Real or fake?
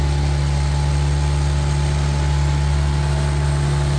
real